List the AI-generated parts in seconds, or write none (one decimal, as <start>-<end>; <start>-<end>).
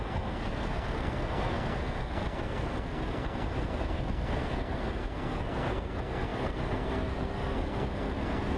0.0-8.6